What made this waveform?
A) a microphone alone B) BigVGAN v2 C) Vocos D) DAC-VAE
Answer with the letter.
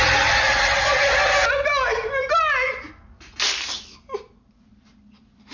A